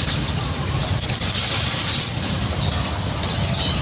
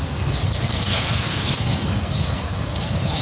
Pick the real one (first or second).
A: first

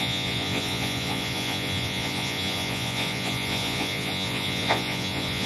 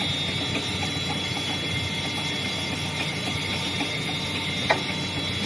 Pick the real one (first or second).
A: second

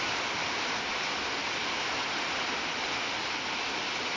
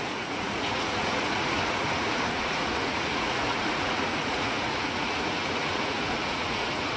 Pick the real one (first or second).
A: first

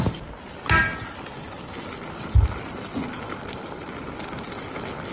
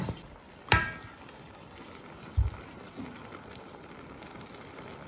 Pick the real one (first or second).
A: first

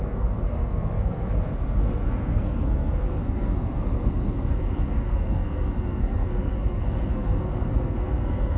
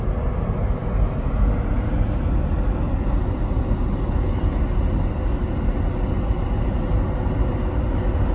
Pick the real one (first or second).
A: second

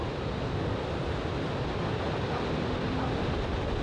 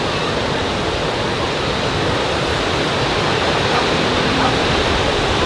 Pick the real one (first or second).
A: first